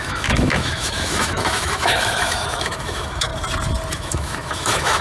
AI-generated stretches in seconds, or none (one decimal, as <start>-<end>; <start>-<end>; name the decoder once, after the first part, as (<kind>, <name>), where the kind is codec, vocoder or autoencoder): 0.0-3.3 (autoencoder, DAC-VAE); 3.9-5.0